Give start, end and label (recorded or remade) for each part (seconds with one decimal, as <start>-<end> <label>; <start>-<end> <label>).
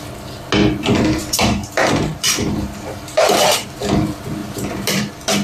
0.0-1.2 recorded; 1.2-3.7 remade; 3.7-4.4 recorded; 4.4-5.0 remade; 5.0-5.4 recorded